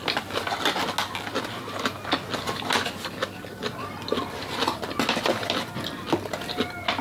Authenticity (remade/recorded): recorded